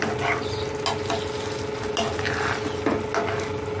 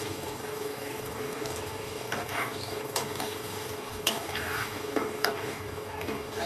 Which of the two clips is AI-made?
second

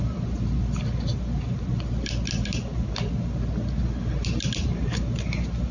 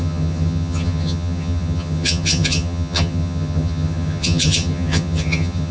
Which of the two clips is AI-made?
second